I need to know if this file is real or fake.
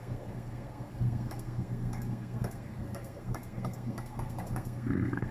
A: fake